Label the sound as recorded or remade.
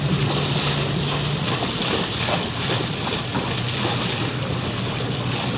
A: recorded